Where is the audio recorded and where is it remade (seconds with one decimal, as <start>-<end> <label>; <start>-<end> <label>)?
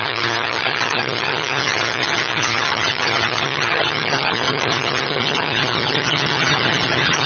0.0-7.3 remade